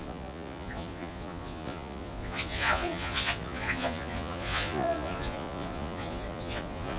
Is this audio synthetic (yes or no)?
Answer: yes